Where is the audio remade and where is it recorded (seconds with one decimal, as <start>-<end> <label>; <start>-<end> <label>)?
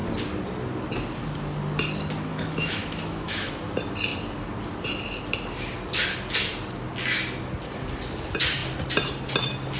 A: 0.0-2.3 recorded; 2.3-3.5 remade; 3.5-9.8 recorded